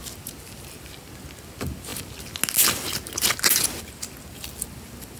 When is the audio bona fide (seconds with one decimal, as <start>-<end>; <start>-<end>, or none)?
0.0-5.2